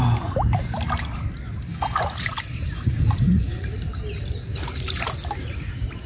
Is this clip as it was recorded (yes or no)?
yes